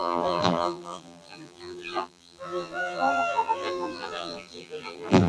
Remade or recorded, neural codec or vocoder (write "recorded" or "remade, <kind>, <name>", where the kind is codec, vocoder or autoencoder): remade, vocoder, BigVGAN v2